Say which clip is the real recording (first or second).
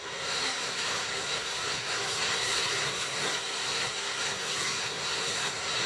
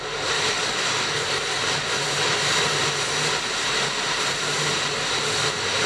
second